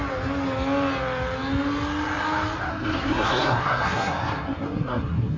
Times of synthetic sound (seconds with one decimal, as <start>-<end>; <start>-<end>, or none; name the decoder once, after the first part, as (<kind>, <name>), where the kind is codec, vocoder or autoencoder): 2.7-5.4 (codec, SNAC)